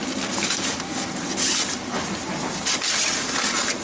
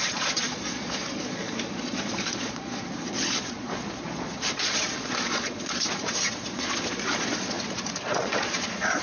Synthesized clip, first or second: second